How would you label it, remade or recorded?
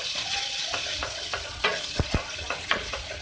remade